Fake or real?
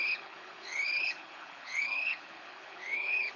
fake